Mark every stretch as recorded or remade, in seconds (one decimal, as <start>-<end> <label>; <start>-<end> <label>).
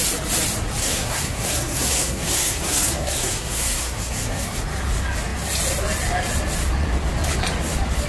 0.0-0.8 recorded; 0.8-4.6 remade; 4.6-8.1 recorded